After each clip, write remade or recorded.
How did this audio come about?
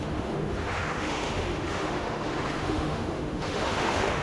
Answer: remade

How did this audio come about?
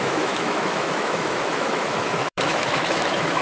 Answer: remade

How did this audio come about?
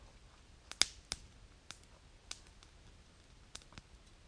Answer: recorded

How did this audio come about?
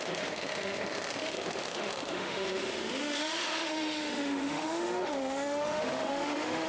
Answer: remade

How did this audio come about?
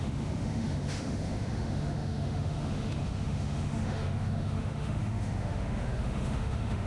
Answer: remade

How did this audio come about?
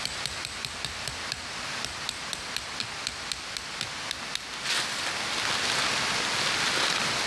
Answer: recorded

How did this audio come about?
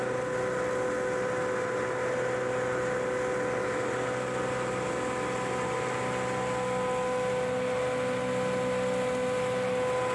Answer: recorded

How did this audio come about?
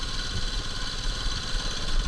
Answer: recorded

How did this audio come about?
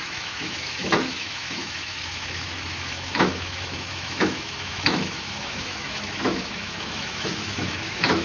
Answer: remade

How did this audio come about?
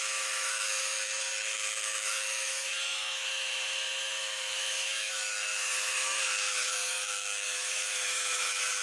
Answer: remade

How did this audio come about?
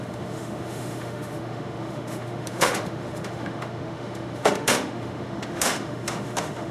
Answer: remade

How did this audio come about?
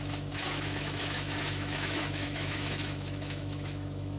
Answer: remade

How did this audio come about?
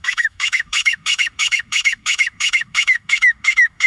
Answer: remade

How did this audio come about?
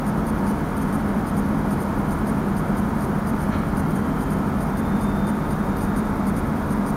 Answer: recorded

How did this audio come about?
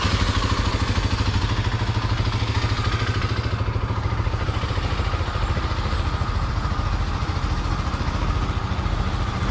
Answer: recorded